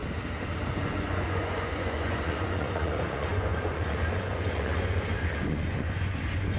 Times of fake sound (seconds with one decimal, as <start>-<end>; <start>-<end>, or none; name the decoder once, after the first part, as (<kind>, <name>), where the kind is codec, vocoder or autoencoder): 0.7-6.6 (vocoder, Vocos)